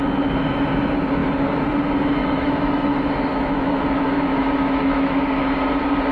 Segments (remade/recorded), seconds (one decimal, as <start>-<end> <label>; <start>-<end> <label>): 0.0-2.2 recorded; 2.2-5.4 remade; 5.4-6.1 recorded